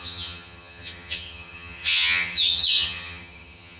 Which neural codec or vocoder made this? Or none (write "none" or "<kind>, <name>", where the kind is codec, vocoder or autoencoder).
vocoder, HiFi-GAN